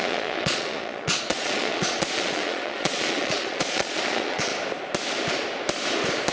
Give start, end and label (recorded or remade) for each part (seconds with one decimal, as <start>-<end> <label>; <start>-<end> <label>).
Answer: 0.0-4.5 remade; 4.5-6.3 recorded